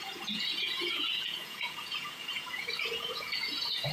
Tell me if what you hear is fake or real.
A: fake